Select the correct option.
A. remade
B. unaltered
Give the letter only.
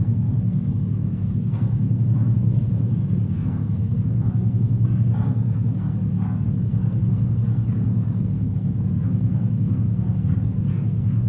A